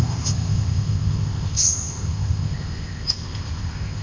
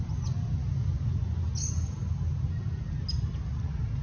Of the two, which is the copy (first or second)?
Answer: first